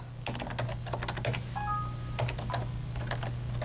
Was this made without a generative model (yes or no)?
yes